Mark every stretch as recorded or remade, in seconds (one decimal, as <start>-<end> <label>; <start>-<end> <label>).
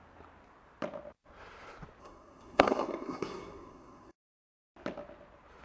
0.0-2.0 recorded; 2.0-4.5 remade; 4.5-5.6 recorded